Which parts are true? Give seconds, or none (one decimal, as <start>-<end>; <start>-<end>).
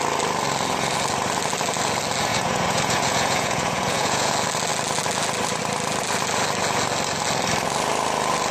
0.0-2.3; 4.3-8.5